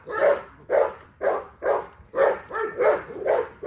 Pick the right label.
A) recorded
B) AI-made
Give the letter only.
A